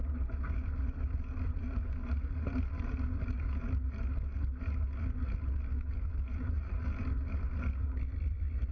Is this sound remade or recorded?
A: recorded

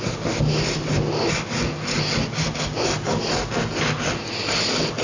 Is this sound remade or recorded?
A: recorded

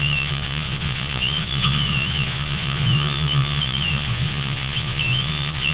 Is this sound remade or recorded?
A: remade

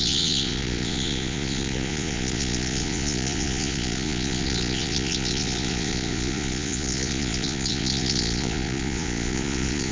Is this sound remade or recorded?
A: remade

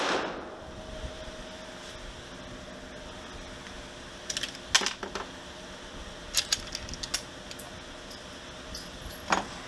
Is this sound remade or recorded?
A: recorded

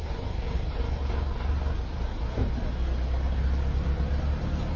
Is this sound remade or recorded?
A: recorded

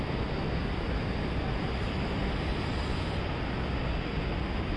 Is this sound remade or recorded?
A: recorded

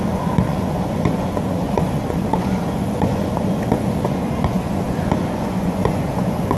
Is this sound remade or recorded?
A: remade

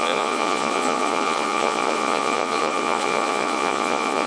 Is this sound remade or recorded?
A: remade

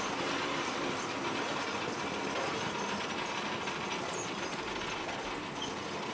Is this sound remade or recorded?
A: recorded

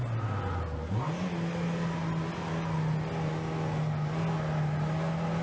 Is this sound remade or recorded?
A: recorded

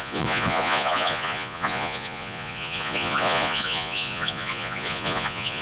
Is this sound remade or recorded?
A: remade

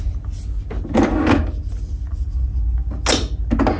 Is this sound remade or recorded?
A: recorded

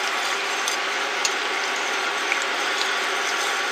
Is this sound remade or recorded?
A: recorded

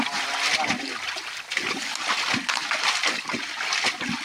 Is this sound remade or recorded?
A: recorded